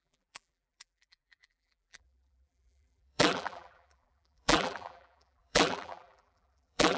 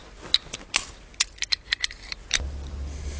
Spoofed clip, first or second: first